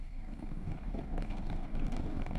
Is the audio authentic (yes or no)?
no